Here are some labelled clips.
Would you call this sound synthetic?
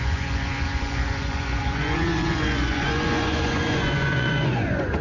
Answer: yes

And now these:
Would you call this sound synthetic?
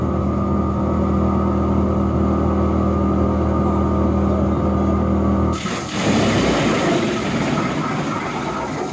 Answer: no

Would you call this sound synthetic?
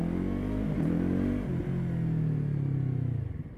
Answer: no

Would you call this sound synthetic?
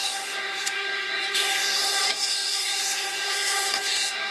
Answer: yes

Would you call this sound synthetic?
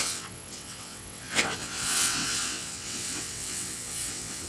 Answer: yes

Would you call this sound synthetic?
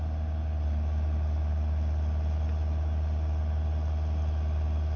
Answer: no